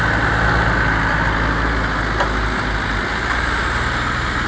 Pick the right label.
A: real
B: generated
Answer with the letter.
A